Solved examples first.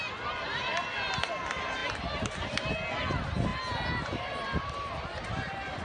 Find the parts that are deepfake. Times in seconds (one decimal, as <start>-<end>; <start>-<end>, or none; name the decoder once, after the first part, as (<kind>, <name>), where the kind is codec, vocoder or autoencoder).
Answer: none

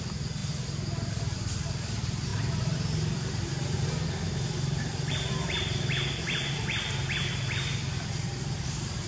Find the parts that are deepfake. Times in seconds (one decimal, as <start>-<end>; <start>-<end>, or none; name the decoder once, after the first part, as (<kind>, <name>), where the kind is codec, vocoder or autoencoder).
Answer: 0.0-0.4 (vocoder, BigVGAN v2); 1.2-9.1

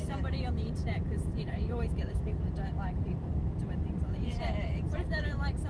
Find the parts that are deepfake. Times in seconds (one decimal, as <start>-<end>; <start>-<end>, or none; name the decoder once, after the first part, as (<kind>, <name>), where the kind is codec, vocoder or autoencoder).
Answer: 1.3-4.4 (vocoder, BigVGAN v2)